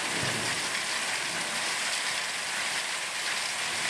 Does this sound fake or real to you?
real